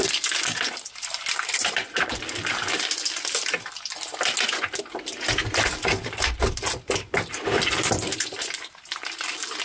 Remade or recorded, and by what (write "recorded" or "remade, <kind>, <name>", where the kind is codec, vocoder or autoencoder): recorded